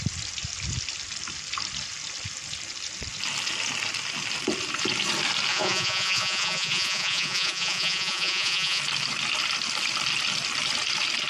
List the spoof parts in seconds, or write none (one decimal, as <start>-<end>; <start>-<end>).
5.5-8.8